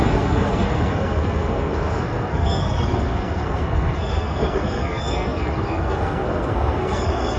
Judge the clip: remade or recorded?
remade